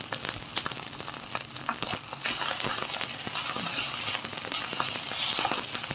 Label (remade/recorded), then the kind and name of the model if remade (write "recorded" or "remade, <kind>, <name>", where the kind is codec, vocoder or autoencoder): recorded